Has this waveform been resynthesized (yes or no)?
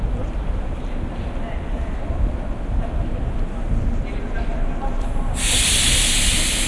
no